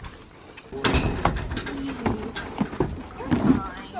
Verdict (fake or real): real